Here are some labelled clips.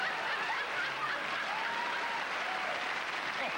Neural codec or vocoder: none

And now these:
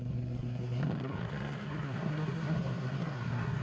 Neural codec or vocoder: codec, SNAC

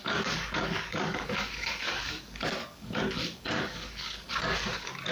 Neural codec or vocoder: codec, DAC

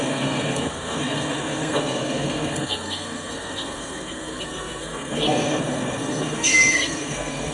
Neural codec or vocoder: codec, SNAC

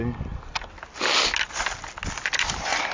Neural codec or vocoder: none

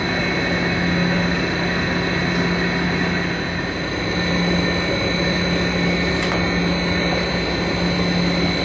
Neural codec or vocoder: none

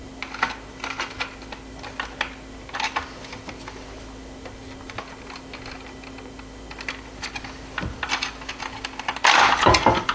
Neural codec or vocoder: none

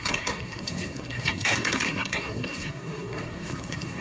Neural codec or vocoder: codec, SNAC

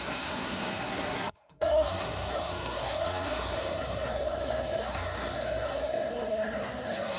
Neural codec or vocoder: codec, SNAC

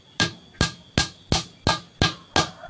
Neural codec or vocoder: none